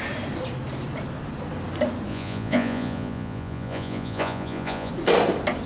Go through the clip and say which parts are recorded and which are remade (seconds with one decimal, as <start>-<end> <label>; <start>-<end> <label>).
0.0-2.1 recorded; 2.1-4.9 remade; 4.9-5.7 recorded